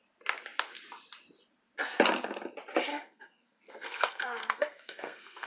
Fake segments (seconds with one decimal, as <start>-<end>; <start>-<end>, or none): 2.9-5.5